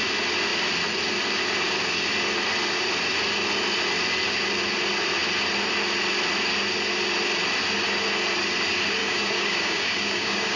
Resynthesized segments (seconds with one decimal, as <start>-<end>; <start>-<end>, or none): 9.0-10.6